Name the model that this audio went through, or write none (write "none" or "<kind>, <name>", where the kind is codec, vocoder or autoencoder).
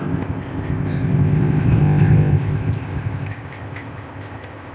codec, ZipCodec